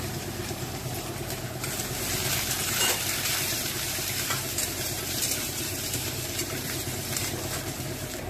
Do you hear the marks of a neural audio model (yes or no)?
yes